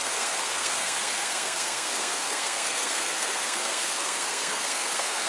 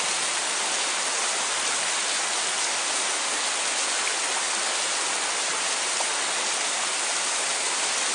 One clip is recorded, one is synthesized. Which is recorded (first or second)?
second